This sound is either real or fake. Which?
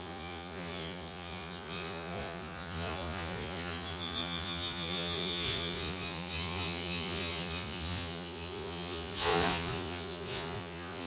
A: fake